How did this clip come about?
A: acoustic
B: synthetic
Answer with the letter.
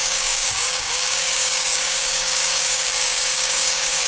B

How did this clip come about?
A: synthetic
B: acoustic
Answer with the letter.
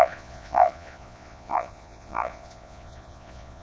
A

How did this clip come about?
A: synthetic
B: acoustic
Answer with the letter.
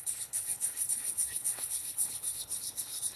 A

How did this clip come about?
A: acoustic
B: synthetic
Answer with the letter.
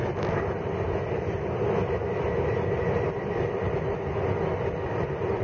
A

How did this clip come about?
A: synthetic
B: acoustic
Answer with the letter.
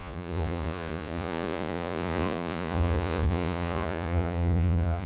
A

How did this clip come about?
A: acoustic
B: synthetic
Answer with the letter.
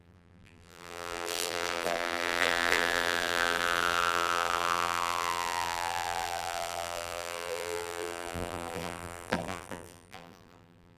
B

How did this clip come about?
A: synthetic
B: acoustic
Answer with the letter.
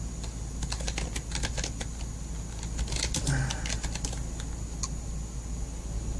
B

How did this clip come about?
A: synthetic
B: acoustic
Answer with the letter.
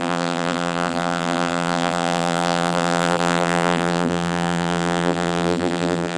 A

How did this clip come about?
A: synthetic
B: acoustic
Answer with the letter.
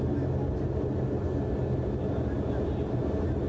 B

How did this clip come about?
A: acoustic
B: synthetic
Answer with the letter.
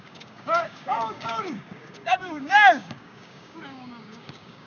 B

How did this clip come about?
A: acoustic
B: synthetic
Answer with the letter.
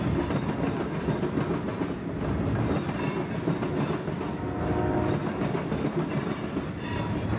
A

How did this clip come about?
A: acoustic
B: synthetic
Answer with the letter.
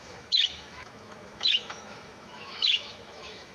B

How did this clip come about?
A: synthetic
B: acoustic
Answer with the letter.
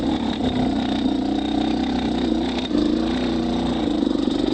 B